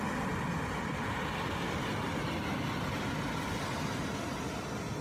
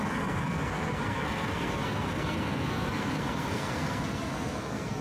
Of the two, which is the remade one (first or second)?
second